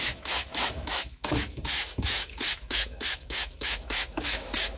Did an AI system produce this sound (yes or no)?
yes